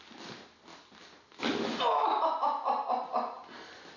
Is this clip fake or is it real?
real